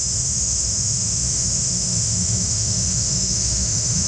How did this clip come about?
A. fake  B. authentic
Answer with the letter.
A